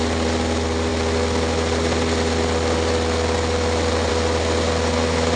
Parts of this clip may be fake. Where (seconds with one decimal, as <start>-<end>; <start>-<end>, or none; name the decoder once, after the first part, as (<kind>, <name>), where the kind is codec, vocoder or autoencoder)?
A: none